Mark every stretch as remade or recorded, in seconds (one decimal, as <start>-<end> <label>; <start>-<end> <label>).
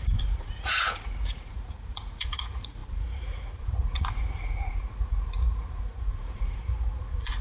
0.0-7.4 remade